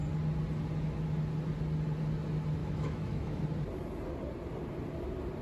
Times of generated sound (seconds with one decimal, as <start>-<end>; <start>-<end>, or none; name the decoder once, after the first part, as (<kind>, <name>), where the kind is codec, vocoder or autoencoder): 2.6-3.4 (autoencoder, DAC-VAE)